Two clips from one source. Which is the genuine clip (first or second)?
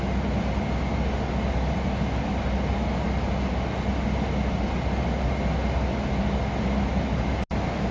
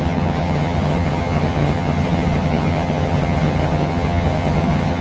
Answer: first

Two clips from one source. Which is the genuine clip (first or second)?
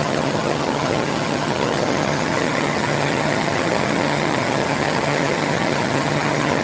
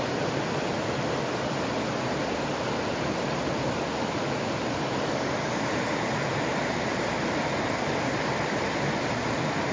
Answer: second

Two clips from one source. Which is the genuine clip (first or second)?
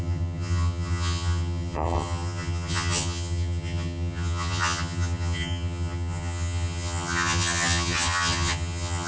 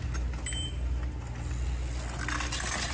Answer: second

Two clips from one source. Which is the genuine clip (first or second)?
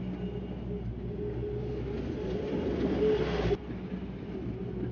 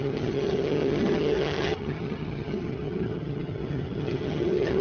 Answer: first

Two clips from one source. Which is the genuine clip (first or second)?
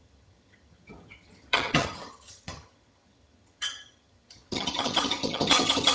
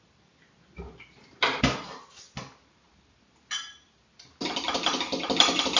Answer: second